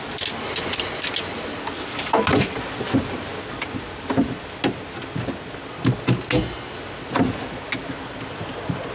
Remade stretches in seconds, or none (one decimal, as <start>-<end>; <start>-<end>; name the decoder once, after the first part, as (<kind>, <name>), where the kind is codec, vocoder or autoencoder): none